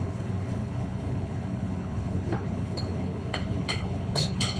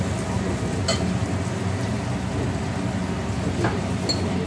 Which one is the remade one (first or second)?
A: first